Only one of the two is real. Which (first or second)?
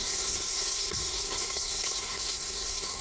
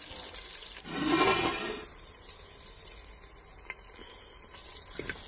second